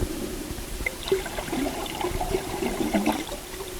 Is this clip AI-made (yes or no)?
yes